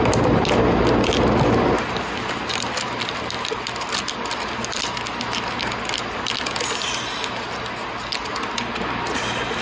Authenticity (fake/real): real